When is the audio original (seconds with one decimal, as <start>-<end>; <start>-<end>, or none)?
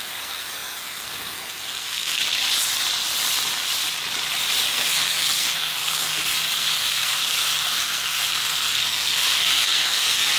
2.2-4.6